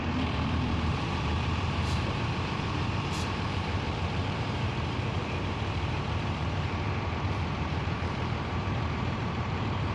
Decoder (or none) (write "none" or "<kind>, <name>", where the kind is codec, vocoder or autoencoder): vocoder, BigVGAN v2